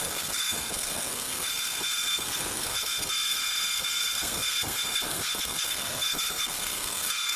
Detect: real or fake fake